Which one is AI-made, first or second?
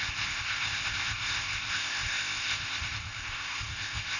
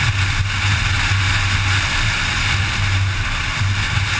first